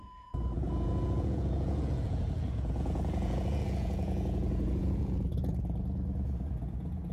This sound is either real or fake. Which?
fake